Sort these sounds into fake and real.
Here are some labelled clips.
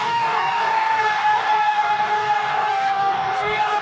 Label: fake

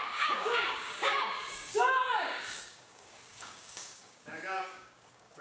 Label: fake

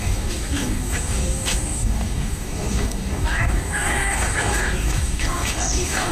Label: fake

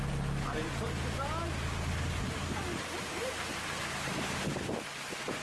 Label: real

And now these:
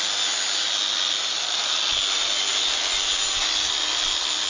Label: real